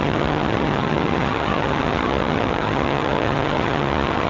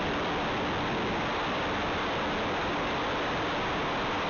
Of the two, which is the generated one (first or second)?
first